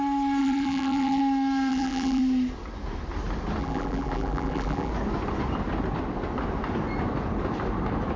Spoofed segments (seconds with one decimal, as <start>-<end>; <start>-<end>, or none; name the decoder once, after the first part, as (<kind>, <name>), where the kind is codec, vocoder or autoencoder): 0.4-1.2 (vocoder, BigVGAN v2); 1.7-2.2; 3.6-4.9